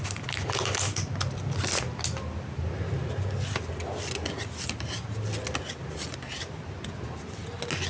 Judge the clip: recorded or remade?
recorded